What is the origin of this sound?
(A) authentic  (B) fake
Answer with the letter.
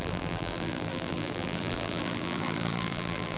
B